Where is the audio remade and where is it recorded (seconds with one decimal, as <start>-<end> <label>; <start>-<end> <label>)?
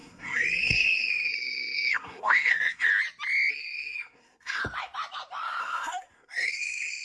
0.0-2.9 remade; 2.9-3.5 recorded; 3.5-4.6 remade; 4.6-5.6 recorded; 5.6-7.0 remade